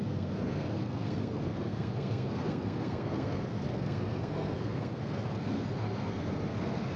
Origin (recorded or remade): remade